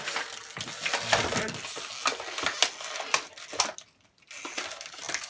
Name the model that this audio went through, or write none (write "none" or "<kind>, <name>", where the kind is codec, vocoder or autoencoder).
none